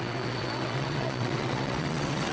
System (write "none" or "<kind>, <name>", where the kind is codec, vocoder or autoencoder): vocoder, WaveNeXt